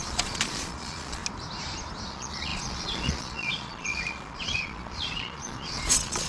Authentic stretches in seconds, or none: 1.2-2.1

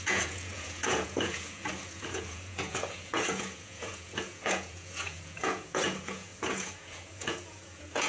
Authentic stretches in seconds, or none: none

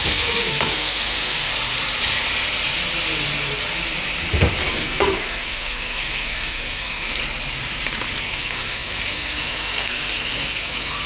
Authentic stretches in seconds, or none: 1.5-4.7; 7.2-8.2

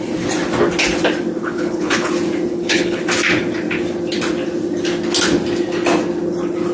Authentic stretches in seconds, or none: 0.0-1.4; 2.1-2.5; 3.0-6.7

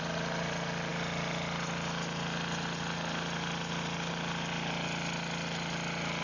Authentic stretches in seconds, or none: 0.0-6.2

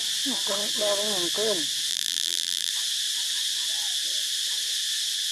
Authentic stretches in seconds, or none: 0.0-1.9; 2.7-5.3

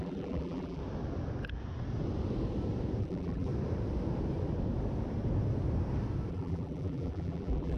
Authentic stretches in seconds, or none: 0.8-3.0; 3.5-6.3